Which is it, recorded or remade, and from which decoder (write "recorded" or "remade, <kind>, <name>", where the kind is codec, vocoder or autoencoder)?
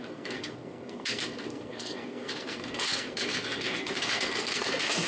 remade, codec, SNAC